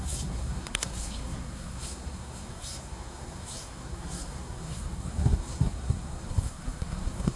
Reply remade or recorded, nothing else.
remade